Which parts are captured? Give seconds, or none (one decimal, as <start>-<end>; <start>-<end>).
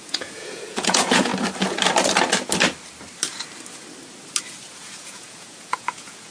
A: 1.3-4.7